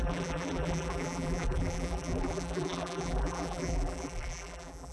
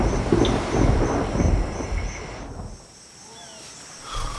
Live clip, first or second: second